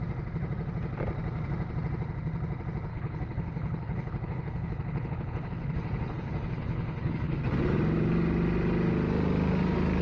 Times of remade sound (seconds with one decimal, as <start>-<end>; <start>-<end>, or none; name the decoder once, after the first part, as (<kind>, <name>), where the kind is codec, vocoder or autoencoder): 2.9-7.4 (codec, HILCodec)